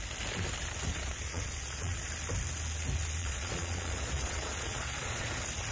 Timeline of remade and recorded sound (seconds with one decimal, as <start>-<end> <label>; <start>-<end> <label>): 0.0-0.9 recorded; 0.9-2.1 remade; 2.1-3.2 recorded; 3.2-5.3 remade; 5.3-5.7 recorded